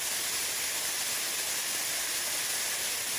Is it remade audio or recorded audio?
recorded